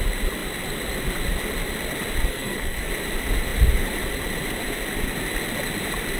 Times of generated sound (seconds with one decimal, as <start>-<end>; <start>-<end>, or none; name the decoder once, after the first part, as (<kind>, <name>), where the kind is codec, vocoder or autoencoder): 2.3-2.9 (codec, SNAC)